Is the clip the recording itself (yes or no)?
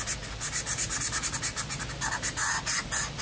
yes